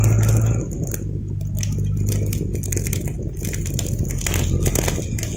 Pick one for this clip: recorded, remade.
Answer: recorded